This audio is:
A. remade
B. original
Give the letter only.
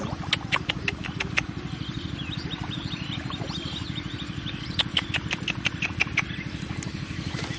A